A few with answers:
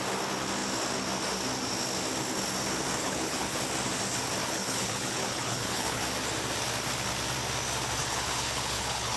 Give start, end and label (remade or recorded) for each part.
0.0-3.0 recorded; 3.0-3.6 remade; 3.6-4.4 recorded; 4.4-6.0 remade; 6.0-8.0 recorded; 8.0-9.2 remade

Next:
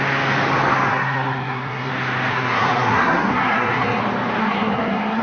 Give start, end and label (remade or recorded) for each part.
0.0-0.9 recorded; 0.9-1.9 remade; 1.9-2.3 recorded; 2.3-4.0 remade; 4.0-4.4 recorded; 4.4-5.2 remade